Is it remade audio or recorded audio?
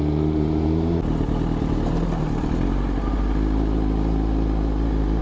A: recorded